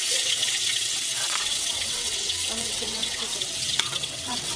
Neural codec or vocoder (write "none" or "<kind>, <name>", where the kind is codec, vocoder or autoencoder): vocoder, WaveNeXt